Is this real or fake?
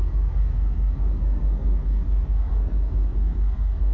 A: fake